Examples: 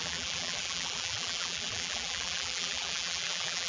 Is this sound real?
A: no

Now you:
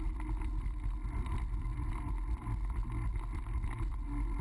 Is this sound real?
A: no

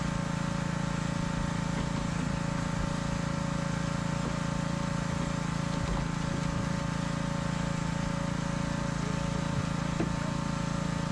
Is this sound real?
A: yes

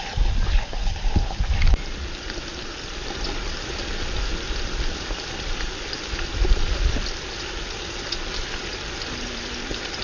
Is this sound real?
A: no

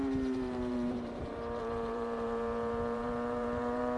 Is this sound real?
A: no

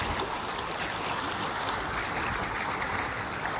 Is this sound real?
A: yes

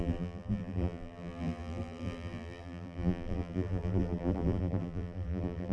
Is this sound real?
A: no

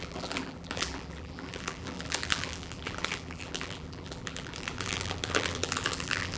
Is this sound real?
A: no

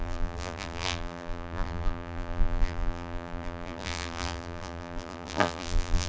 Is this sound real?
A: no